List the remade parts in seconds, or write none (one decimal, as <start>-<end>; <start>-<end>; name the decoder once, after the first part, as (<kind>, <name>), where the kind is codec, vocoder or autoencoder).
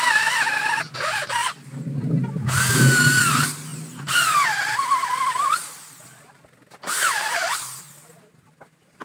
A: 1.4-2.1 (vocoder, BigVGAN v2); 5.6-7.4